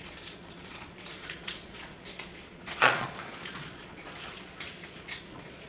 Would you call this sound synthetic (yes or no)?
yes